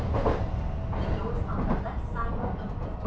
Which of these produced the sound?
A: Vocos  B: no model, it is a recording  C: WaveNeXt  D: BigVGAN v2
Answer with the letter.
B